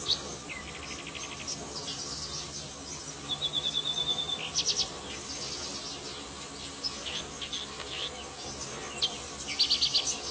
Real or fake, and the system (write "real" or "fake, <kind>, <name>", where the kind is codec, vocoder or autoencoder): real